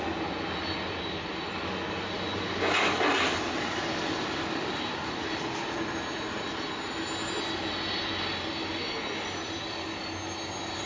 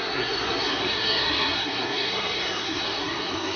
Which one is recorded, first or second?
first